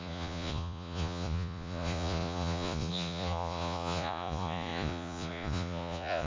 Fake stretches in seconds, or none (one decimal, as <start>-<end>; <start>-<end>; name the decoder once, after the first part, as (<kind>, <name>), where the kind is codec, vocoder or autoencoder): 0.0-6.3 (vocoder, Vocos)

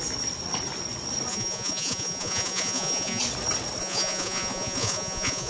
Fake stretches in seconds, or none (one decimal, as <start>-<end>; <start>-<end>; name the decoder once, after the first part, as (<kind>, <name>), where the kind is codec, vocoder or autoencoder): 1.3-3.2 (vocoder, Vocos); 3.8-5.5

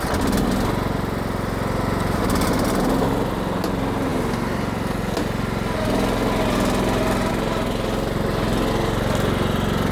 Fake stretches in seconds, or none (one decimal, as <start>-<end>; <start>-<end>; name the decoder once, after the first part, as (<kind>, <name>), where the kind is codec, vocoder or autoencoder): none